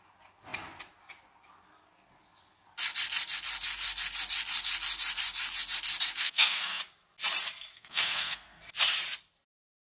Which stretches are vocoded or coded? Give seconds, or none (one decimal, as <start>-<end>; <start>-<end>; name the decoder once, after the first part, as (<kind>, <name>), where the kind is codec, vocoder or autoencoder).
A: 6.2-6.8 (codec, SNAC); 7.7-8.6